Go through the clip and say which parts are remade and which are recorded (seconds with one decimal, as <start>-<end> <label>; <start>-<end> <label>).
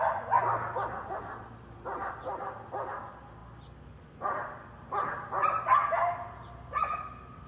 0.0-3.4 recorded; 3.4-4.0 remade; 4.0-6.8 recorded; 6.8-7.5 remade